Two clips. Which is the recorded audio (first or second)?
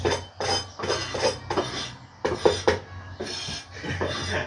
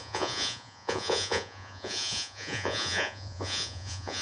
first